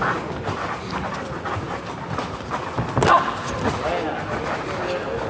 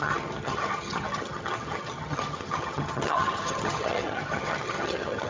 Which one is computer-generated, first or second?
second